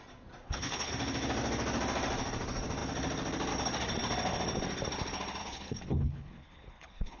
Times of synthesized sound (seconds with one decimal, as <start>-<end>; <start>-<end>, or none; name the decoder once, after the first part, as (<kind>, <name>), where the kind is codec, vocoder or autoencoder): 0.4-0.9 (codec, HILCodec); 5.4-7.2